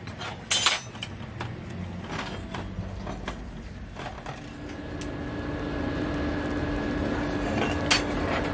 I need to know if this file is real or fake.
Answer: real